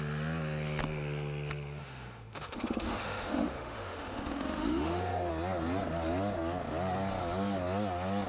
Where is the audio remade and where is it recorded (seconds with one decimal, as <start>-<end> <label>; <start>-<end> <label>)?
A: 0.0-1.8 recorded; 1.8-5.3 remade; 5.3-8.3 recorded